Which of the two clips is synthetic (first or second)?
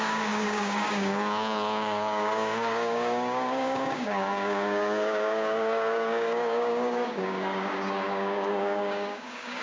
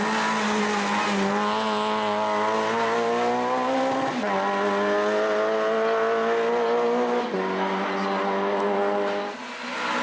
first